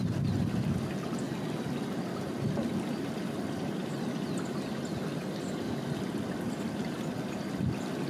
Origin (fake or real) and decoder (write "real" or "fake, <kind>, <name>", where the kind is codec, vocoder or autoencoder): real